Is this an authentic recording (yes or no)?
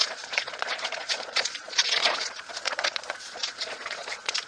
no